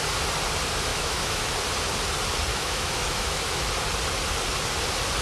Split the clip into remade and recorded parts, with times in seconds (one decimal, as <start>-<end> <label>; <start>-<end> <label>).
0.0-0.9 recorded; 0.9-1.5 remade; 1.5-2.5 recorded; 2.5-3.7 remade; 3.7-5.2 recorded